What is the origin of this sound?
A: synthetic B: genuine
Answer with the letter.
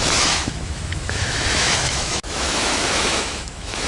A